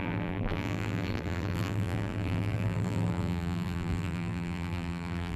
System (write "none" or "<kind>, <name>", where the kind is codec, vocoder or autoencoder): vocoder, BigVGAN v2